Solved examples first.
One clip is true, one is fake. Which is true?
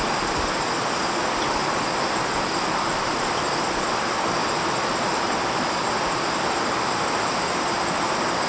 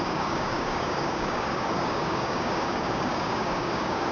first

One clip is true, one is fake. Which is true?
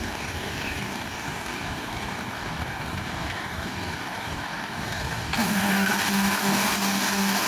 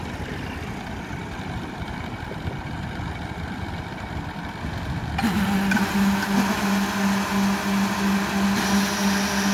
second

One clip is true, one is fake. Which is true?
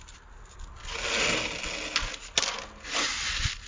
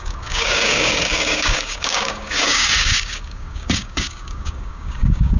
first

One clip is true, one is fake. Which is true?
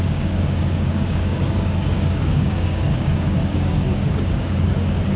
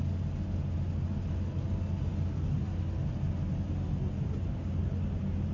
second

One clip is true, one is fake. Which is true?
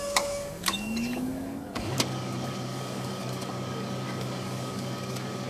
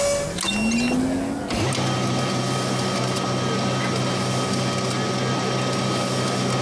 second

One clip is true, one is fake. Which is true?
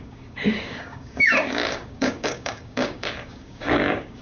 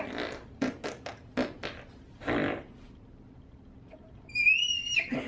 second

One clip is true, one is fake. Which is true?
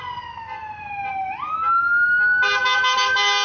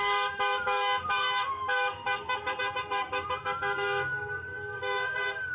first